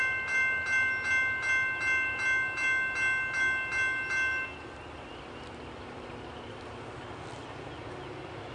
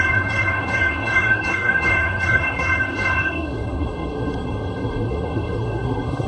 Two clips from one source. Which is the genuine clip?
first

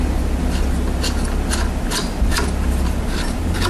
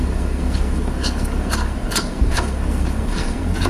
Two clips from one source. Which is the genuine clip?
first